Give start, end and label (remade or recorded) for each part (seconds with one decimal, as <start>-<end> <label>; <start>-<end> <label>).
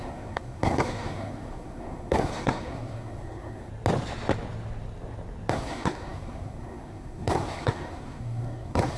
0.0-3.7 remade; 3.7-5.5 recorded; 5.5-9.0 remade